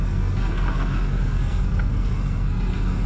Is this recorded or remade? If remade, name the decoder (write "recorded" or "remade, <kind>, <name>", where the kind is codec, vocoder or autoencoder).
remade, codec, SNAC